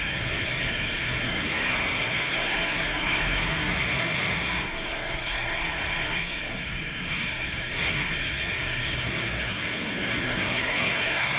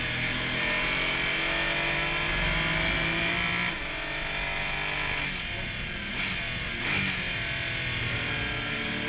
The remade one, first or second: first